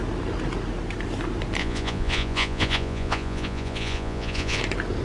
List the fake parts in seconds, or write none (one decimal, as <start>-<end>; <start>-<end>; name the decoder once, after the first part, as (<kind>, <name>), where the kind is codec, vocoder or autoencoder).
1.6-4.6 (vocoder, Vocos)